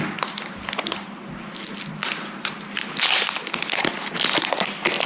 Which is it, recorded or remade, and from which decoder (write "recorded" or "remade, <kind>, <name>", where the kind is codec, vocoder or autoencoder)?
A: recorded